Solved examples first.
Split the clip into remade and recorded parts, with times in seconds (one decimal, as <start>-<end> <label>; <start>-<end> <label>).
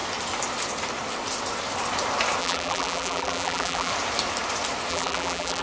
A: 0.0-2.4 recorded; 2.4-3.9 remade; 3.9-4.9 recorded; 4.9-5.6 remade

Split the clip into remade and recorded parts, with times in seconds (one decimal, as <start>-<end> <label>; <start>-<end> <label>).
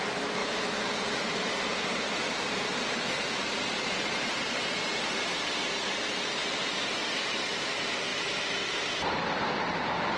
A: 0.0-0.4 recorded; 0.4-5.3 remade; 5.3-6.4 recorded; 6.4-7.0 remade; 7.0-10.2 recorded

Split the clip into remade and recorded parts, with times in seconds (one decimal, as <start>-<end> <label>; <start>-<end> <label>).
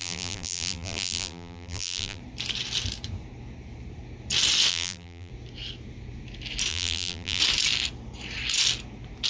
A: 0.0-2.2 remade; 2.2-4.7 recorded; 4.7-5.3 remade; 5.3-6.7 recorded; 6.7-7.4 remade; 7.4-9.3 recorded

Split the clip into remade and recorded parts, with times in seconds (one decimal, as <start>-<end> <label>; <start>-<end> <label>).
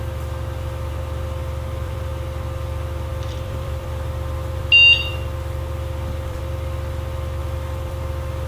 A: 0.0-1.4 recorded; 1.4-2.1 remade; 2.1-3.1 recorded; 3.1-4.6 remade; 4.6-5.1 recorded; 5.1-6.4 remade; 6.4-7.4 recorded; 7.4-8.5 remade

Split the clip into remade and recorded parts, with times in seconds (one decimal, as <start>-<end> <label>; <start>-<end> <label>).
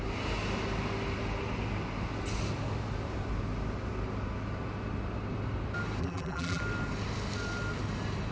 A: 0.0-6.0 recorded; 6.0-6.6 remade; 6.6-8.3 recorded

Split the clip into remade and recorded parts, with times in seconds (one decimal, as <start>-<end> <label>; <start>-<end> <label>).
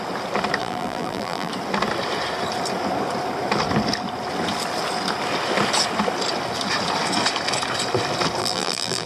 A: 0.0-0.6 recorded; 0.6-1.5 remade; 1.5-8.4 recorded; 8.4-9.1 remade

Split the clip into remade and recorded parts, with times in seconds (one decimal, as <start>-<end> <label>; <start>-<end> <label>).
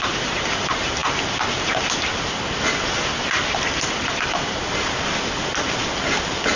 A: 0.0-6.6 recorded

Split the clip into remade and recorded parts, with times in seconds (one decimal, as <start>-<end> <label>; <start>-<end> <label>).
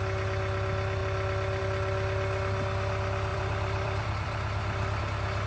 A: 0.0-3.3 recorded; 3.3-5.0 remade; 5.0-5.5 recorded